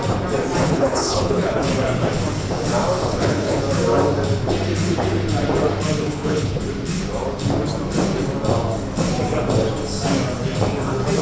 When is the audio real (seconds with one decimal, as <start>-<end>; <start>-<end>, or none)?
0.0-0.6; 1.7-3.0; 3.6-6.0; 6.6-11.2